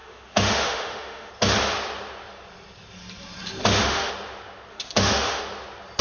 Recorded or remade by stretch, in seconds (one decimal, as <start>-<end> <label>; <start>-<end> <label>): 0.0-1.3 remade; 1.3-3.6 recorded; 3.6-4.1 remade; 4.1-4.7 recorded; 4.7-5.4 remade; 5.4-6.0 recorded